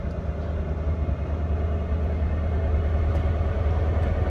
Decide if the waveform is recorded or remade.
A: recorded